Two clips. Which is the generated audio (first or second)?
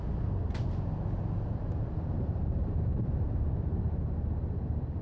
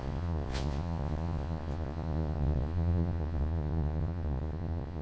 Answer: second